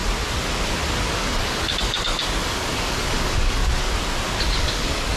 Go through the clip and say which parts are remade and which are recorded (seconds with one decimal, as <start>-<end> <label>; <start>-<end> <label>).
0.0-1.0 recorded; 1.0-3.6 remade; 3.6-4.5 recorded; 4.5-5.2 remade